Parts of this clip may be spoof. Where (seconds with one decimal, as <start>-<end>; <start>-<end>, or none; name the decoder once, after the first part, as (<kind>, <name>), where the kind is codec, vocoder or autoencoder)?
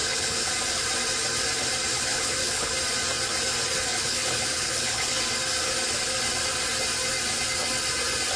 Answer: 0.0-0.5 (codec, HILCodec); 1.9-2.7; 3.9-5.2